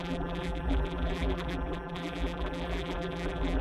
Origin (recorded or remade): remade